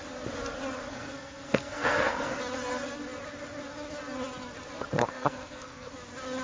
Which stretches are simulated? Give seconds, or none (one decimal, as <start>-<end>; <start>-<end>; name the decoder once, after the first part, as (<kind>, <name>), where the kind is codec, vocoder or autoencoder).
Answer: 0.9-2.4 (codec, SNAC); 5.0-5.9

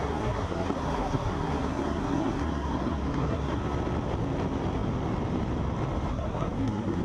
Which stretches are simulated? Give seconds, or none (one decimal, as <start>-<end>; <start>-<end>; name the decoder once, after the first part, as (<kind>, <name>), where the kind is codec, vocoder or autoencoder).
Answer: 0.0-3.6 (codec, SNAC); 6.1-7.0

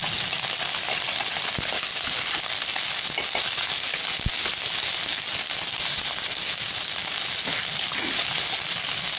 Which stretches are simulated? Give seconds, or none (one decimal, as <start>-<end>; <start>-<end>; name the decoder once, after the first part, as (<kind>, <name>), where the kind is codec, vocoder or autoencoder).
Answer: none